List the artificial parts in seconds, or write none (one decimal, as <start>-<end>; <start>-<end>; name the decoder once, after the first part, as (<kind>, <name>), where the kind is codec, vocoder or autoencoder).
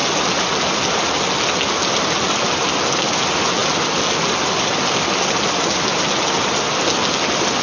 none